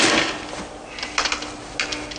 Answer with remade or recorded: recorded